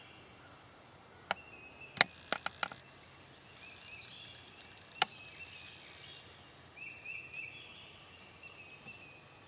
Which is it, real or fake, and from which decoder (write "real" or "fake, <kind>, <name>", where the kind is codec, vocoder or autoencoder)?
real